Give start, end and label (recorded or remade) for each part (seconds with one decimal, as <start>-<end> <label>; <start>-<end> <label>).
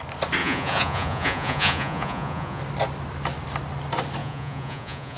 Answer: 0.0-0.4 recorded; 0.4-2.6 remade; 2.6-4.2 recorded; 4.2-5.2 remade